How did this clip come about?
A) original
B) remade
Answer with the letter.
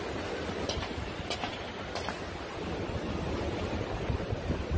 A